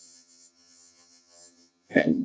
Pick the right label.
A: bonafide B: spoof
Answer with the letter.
B